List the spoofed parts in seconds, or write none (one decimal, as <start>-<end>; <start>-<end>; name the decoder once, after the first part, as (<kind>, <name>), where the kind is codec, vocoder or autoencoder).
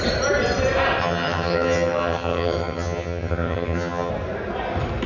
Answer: 1.0-4.1 (vocoder, HiFi-GAN)